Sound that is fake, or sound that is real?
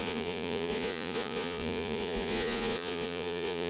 fake